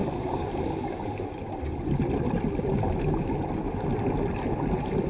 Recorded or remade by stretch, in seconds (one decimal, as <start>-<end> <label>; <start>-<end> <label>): 0.0-5.1 recorded